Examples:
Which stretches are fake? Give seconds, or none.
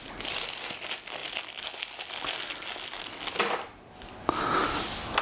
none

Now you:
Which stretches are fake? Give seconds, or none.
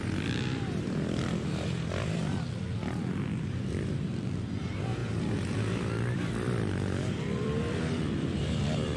0.0-2.2 (vocoder, BigVGAN v2); 4.1-9.0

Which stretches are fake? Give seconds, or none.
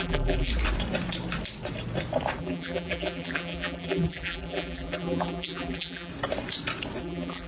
0.0-0.5 (vocoder, BigVGAN v2); 2.4-6.1; 7.0-7.5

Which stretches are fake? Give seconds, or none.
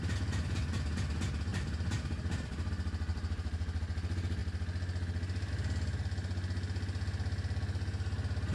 1.5-2.7 (vocoder, BigVGAN v2); 3.1-3.8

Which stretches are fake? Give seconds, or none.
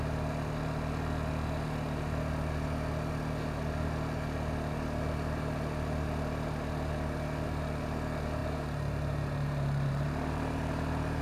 8.4-11.2 (vocoder, BigVGAN v2)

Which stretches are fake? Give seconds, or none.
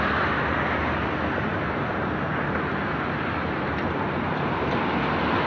1.5-4.8 (vocoder, BigVGAN v2)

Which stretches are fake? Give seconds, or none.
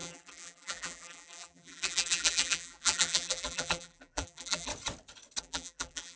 0.0-4.7 (vocoder, BigVGAN v2); 5.4-6.2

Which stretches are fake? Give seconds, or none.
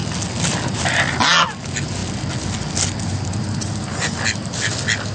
none